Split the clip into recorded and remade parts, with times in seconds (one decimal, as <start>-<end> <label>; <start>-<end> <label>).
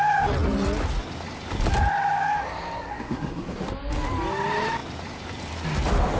0.0-2.9 recorded; 2.9-3.4 remade; 3.4-6.2 recorded